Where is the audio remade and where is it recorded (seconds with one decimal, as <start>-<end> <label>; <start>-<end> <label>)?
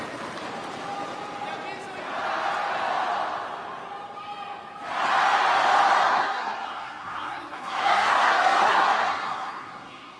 0.0-6.1 recorded; 6.1-10.2 remade